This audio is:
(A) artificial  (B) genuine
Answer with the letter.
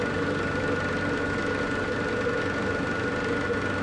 B